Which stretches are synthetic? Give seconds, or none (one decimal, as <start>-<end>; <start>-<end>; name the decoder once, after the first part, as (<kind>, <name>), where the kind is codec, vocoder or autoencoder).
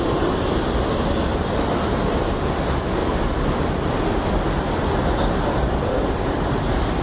3.0-6.6 (vocoder, BigVGAN v2)